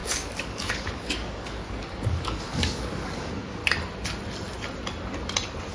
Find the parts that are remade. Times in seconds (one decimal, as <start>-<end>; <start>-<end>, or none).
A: 0.0-3.6